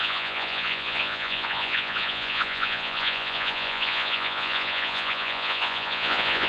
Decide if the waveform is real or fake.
fake